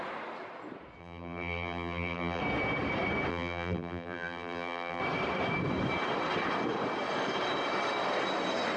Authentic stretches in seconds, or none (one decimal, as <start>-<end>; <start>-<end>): 0.0-1.0; 2.4-3.3; 5.0-8.8